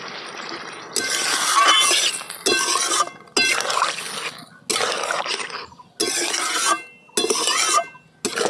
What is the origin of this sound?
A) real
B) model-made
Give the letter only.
A